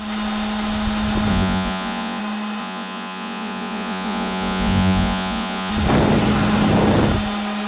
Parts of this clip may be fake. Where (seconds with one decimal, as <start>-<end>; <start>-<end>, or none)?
1.3-2.2; 2.6-5.7